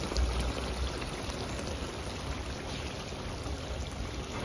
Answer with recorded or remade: recorded